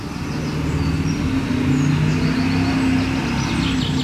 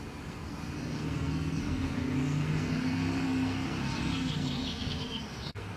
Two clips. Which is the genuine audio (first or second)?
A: first